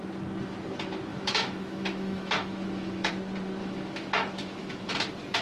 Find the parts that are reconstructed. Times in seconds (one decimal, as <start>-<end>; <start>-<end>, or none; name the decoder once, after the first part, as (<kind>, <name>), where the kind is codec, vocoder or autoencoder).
1.1-3.1 (autoencoder, DAC-VAE); 3.6-4.9